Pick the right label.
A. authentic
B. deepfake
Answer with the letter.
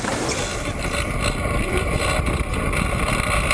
A